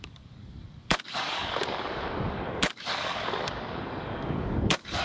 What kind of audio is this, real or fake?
fake